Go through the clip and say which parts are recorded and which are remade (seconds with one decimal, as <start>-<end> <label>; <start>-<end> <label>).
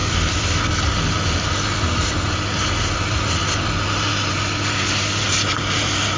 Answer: 0.0-6.2 recorded